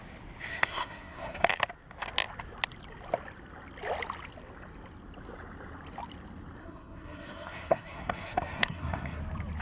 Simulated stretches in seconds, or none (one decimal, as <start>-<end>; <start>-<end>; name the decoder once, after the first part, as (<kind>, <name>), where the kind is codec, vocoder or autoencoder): 0.5-1.5 (codec, SNAC); 6.6-9.2